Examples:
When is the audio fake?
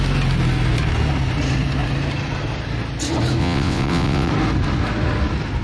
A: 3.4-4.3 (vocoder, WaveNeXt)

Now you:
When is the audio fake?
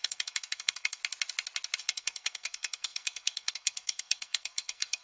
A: 0.0-1.0 (codec, SNAC); 1.8-5.0